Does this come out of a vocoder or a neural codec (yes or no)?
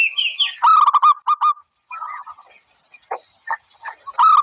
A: no